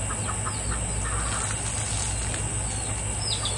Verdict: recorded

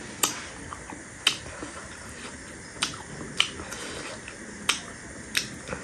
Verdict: recorded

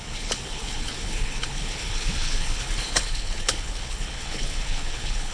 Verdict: remade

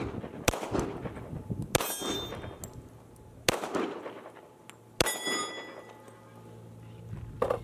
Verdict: recorded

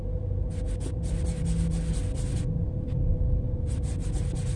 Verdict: recorded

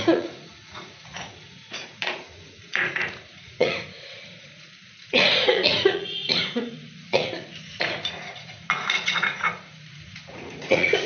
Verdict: remade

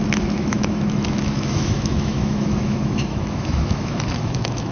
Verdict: remade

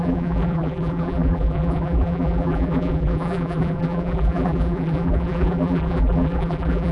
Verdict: remade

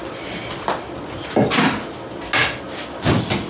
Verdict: recorded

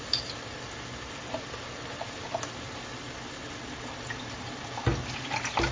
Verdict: recorded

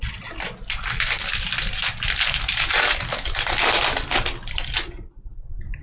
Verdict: recorded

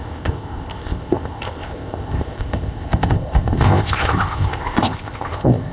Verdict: remade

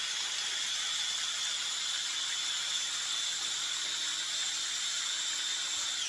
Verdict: recorded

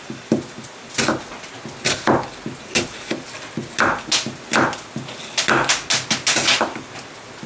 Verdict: recorded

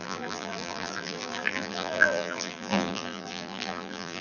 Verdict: remade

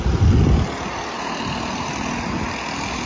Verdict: recorded